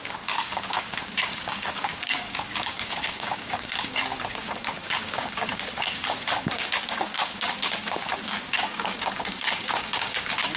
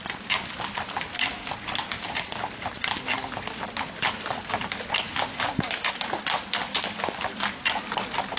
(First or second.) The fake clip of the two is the first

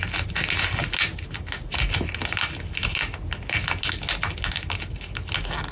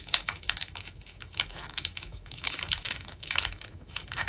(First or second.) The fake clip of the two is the second